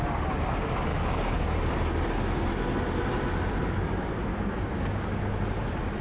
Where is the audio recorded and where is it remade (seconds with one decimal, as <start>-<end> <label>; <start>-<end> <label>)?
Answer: 0.0-0.9 recorded; 0.9-1.7 remade; 1.7-4.3 recorded; 4.3-5.2 remade; 5.2-6.0 recorded